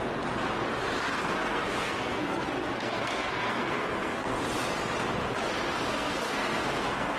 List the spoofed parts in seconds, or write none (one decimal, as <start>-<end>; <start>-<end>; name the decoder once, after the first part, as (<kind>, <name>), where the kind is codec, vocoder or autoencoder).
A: 1.1-4.4 (codec, SNAC); 5.9-7.2